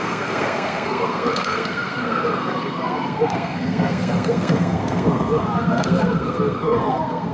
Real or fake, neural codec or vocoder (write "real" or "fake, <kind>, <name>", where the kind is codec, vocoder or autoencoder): fake, codec, SNAC